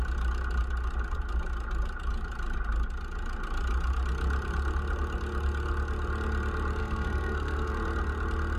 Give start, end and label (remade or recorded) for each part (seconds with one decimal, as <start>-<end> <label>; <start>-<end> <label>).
0.0-6.8 recorded; 6.8-7.7 remade; 7.7-8.6 recorded